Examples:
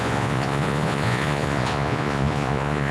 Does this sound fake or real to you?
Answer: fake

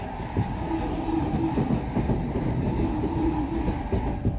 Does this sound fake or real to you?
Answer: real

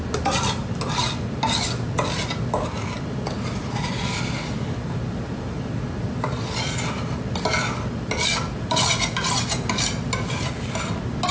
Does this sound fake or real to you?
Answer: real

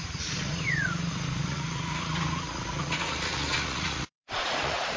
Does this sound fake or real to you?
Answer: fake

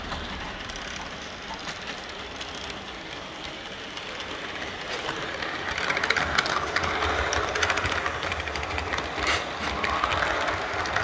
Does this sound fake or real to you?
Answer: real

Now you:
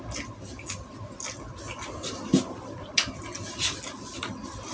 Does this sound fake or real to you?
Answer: real